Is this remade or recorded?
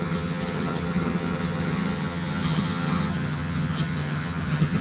remade